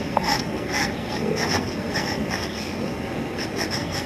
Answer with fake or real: fake